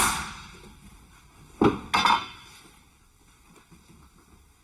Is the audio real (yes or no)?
yes